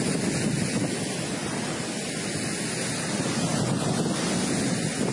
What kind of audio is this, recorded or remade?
recorded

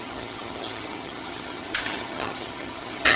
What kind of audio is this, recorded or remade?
remade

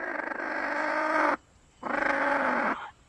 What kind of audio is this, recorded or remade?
remade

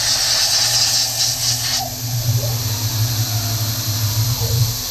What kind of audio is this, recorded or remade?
recorded